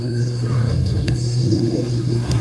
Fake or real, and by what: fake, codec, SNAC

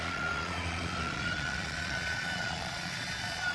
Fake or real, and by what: fake, vocoder, Vocos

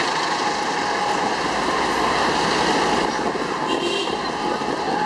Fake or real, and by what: real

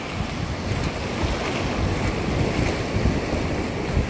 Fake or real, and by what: real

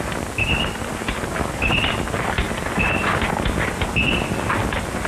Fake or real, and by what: real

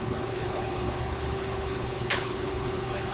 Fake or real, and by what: fake, codec, HILCodec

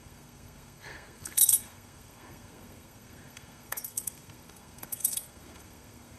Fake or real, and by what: fake, codec, SNAC